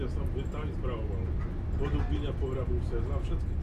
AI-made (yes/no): no